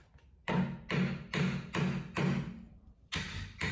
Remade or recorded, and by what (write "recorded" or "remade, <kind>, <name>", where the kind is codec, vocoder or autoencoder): recorded